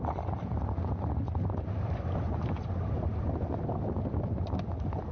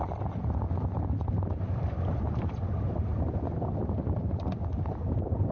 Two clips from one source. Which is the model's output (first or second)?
second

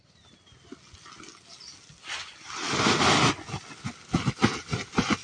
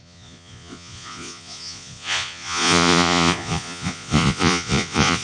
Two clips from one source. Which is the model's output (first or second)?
second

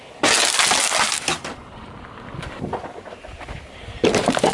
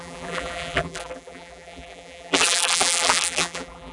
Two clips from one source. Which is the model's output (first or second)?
second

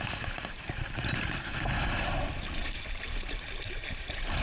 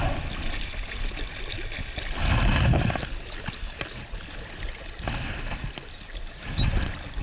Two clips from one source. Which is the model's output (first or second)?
first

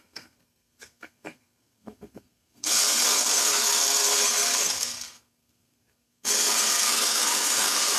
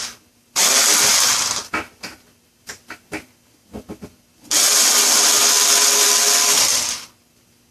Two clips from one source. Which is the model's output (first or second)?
first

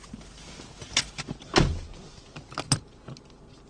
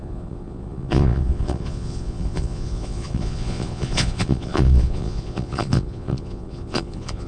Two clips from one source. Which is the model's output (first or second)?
second